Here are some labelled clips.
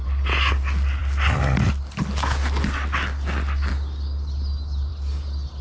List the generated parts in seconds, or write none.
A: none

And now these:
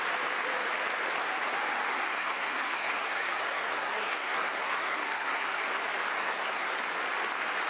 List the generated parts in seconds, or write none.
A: 1.9-5.6 (codec, SNAC); 6.2-6.8